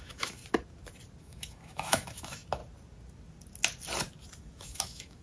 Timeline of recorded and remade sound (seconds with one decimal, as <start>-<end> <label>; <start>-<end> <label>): 0.0-0.4 remade; 0.4-1.2 recorded; 1.2-2.6 remade; 2.6-4.4 recorded; 4.4-5.2 remade